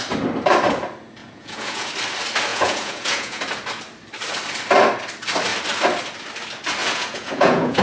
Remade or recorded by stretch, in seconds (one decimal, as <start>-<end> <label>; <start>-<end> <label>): 0.0-1.2 recorded; 1.2-1.9 remade; 1.9-2.5 recorded; 2.5-3.4 remade; 3.4-6.8 recorded; 6.8-7.8 remade